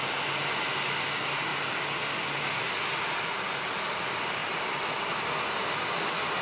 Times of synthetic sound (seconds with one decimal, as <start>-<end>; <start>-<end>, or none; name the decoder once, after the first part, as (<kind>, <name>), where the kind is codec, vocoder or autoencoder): none